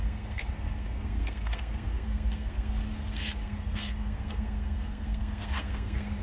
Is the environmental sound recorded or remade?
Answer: remade